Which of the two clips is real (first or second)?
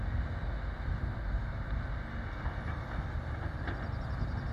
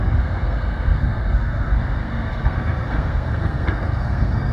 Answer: first